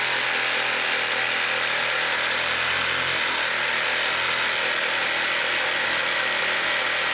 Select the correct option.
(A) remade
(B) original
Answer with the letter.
B